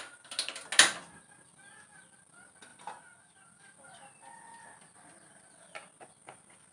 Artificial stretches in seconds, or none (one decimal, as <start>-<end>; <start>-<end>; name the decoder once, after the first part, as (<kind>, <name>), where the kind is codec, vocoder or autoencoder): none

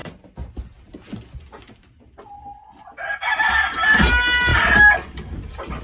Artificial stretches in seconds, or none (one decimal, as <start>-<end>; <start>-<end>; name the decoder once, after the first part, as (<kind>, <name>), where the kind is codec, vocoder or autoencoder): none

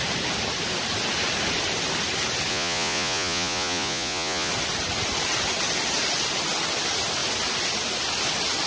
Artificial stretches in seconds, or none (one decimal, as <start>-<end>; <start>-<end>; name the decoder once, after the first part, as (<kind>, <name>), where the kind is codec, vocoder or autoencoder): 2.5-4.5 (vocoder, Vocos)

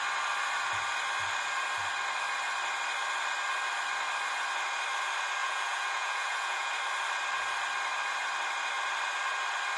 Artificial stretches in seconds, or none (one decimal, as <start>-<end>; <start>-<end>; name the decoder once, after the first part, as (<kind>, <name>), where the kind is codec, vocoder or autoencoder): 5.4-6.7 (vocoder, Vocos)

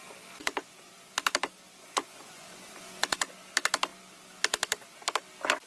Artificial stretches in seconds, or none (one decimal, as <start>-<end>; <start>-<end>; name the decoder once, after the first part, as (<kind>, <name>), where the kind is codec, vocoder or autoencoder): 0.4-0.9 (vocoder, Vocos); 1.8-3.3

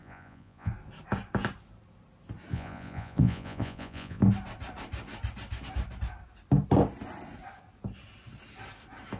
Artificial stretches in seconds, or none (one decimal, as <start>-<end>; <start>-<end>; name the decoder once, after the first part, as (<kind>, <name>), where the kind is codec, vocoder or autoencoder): 0.0-0.7 (vocoder, Vocos); 2.5-4.2